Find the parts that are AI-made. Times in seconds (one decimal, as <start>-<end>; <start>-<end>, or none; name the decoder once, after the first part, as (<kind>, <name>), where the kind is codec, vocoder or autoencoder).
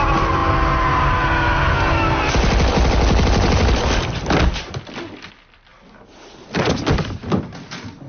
none